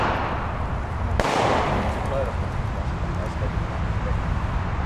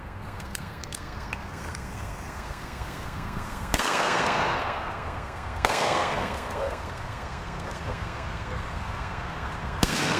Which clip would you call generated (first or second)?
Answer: second